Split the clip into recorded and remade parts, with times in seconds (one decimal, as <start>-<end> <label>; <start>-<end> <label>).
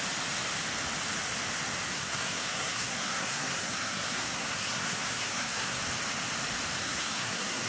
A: 0.0-1.9 recorded; 1.9-5.8 remade; 5.8-6.8 recorded; 6.8-7.7 remade